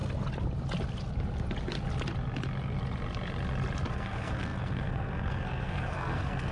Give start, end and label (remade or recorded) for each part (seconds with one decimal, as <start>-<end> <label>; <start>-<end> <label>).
0.0-3.9 recorded; 3.9-6.5 remade